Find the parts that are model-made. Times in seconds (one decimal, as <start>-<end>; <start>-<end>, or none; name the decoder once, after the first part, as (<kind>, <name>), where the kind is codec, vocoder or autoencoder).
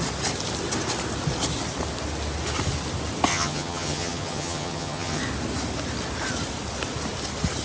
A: 3.3-5.2 (vocoder, HiFi-GAN)